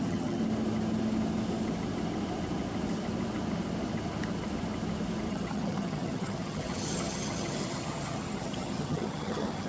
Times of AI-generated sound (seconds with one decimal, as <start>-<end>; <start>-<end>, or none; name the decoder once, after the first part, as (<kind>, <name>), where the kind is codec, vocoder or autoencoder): 0.0-0.4 (vocoder, HiFi-GAN); 5.3-9.7